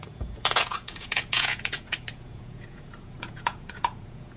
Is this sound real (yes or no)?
no